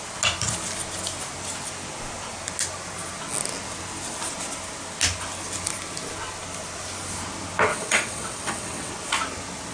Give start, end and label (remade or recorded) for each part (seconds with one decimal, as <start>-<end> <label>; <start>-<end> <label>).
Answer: 0.0-7.7 recorded; 7.7-8.9 remade; 8.9-9.7 recorded